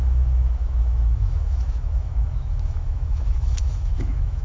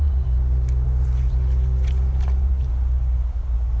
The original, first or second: second